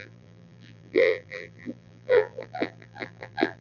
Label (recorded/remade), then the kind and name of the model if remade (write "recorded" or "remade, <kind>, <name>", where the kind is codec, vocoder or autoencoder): remade, vocoder, BigVGAN v2